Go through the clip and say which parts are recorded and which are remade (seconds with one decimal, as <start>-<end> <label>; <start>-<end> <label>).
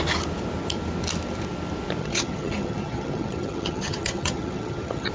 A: 0.0-2.0 recorded; 2.0-5.1 remade